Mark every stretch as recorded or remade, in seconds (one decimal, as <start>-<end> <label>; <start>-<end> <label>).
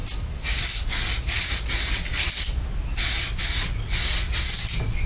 0.0-5.1 recorded